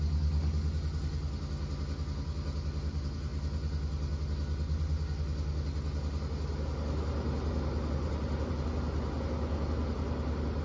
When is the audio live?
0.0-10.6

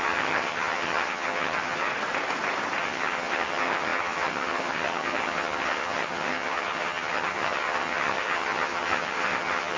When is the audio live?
1.9-2.8

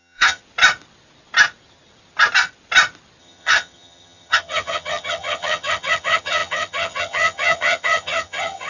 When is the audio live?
0.4-3.2

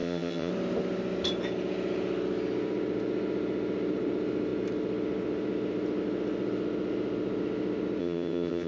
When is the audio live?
0.5-8.0

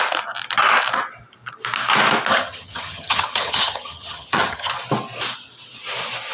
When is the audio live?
0.0-2.3; 4.7-6.3